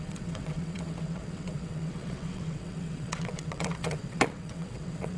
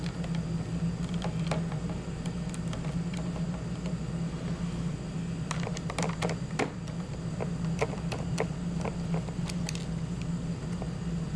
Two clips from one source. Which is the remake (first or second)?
first